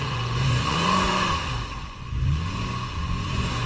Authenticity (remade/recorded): remade